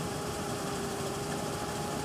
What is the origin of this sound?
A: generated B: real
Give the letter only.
A